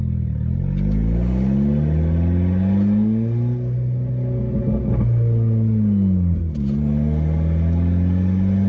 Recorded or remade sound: recorded